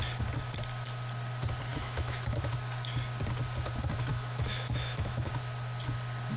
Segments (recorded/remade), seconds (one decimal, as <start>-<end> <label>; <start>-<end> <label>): 0.0-1.7 recorded; 1.7-2.5 remade; 2.5-4.1 recorded; 4.1-5.3 remade; 5.3-6.4 recorded